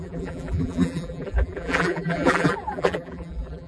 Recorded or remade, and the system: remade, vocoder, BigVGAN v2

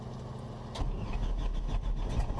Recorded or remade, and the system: recorded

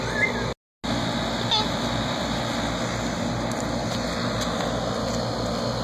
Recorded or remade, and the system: recorded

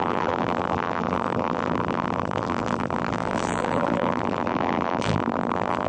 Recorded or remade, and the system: remade, vocoder, BigVGAN v2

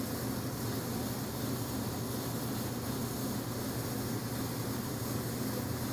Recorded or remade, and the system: recorded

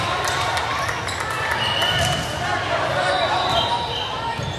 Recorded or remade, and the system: recorded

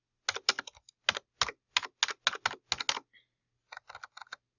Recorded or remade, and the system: recorded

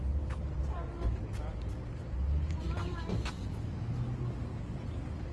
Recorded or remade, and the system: recorded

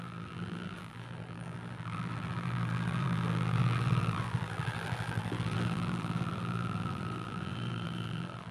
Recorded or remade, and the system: remade, vocoder, BigVGAN v2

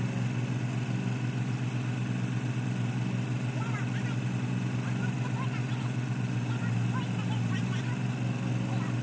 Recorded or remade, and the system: recorded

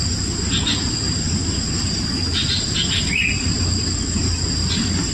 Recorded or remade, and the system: remade, vocoder, BigVGAN v2